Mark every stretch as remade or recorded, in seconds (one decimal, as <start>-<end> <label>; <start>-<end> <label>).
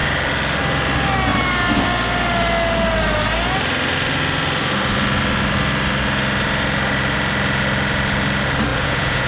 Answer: 0.0-8.7 recorded; 8.7-9.3 remade